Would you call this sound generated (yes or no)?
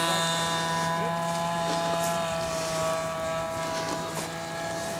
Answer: no